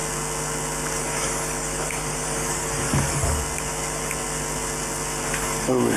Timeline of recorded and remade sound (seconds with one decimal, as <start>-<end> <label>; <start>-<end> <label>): 0.0-1.0 recorded; 1.0-3.4 remade; 3.4-5.3 recorded; 5.3-6.0 remade